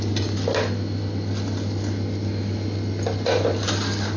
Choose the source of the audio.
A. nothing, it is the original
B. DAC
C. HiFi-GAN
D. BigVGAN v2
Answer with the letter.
A